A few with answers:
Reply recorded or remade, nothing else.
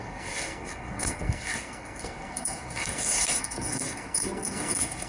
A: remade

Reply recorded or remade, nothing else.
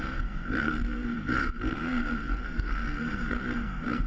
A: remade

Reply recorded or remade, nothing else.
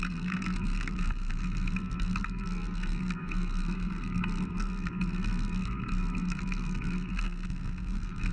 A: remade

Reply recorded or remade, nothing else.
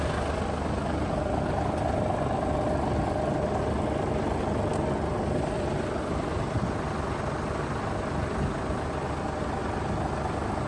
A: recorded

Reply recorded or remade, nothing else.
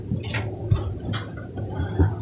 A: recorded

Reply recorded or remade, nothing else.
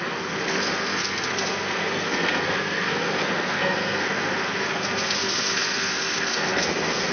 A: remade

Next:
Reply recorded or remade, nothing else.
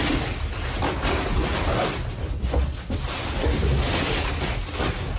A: recorded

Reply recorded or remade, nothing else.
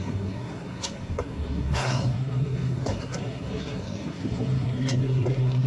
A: remade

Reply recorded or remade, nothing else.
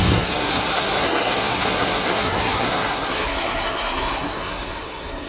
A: remade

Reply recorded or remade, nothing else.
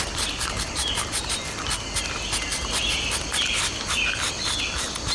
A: recorded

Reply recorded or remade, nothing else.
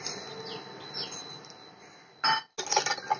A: recorded